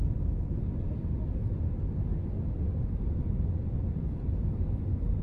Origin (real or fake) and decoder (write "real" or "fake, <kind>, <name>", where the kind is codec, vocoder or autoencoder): real